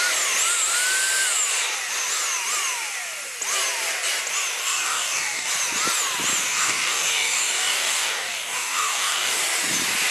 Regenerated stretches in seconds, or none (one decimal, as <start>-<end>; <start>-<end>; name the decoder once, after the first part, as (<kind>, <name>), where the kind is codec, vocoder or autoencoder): 4.6-5.5 (codec, DAC); 6.4-9.4